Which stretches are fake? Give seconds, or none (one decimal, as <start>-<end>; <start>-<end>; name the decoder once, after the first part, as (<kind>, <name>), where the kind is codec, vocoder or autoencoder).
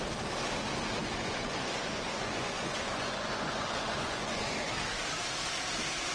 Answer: 1.0-4.7 (vocoder, Vocos)